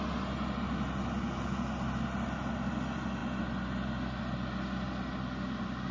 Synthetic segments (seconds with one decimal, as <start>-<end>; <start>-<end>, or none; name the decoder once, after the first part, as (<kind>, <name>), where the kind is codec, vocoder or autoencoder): none